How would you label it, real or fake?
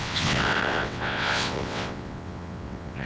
fake